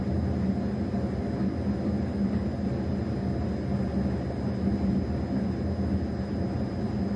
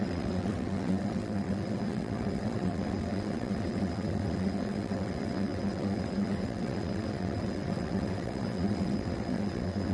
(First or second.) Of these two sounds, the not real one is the second